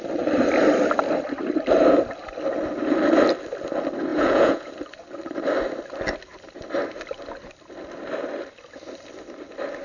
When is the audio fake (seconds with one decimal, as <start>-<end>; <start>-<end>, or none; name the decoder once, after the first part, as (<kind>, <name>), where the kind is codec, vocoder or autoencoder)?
4.1-4.7 (vocoder, Vocos)